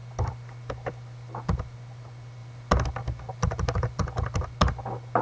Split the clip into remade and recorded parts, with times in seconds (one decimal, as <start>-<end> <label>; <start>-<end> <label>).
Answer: 0.0-5.2 recorded